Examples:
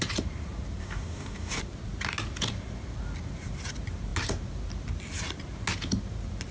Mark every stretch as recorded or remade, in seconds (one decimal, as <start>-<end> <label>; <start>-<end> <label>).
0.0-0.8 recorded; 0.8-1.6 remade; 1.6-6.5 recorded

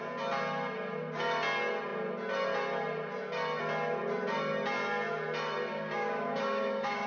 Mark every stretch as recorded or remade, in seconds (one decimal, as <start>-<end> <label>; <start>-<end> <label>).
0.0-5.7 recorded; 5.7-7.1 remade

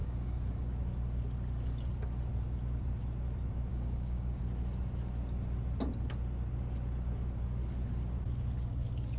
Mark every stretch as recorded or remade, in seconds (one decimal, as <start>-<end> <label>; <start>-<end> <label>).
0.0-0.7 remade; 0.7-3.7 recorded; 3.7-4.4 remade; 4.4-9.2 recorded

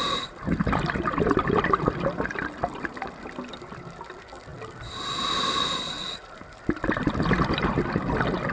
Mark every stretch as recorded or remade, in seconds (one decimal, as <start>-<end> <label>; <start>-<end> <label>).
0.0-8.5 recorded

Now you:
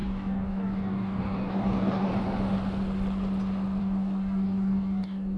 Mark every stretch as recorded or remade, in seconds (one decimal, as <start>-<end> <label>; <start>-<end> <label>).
0.0-2.1 remade; 2.1-3.8 recorded; 3.8-5.4 remade

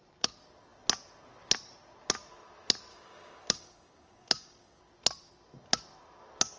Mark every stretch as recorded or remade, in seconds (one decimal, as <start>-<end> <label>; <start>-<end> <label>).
0.0-2.9 recorded; 2.9-4.8 remade; 4.8-6.6 recorded

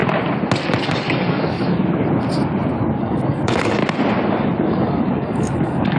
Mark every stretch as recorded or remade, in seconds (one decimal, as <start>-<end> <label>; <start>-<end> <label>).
0.0-0.8 recorded; 0.8-1.8 remade; 1.8-3.0 recorded; 3.0-3.8 remade; 3.8-4.7 recorded; 4.7-6.0 remade